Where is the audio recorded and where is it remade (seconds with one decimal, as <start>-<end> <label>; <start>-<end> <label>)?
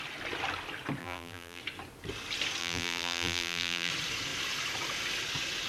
0.0-1.0 recorded; 1.0-1.6 remade; 1.6-2.6 recorded; 2.6-3.9 remade; 3.9-5.7 recorded